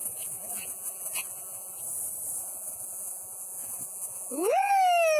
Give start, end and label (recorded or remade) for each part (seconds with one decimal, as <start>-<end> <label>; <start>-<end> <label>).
0.0-1.8 remade; 1.8-2.4 recorded; 2.4-4.7 remade; 4.7-5.2 recorded